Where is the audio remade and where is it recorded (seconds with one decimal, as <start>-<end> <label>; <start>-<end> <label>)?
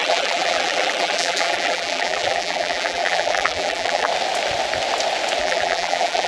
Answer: 0.0-4.1 remade; 4.1-5.4 recorded; 5.4-6.3 remade